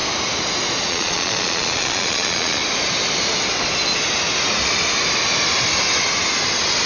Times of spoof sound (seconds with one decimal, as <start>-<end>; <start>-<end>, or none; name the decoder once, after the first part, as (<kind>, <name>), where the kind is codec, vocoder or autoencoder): 0.9-2.6 (vocoder, Vocos)